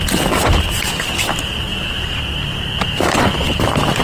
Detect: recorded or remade recorded